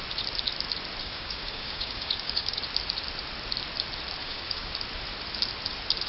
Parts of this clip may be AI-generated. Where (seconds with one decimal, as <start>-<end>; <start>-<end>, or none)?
1.0-2.6; 4.2-4.7